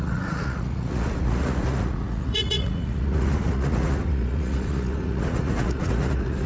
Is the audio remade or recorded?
remade